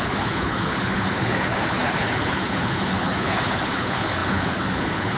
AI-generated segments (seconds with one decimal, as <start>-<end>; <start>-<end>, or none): 0.0-5.2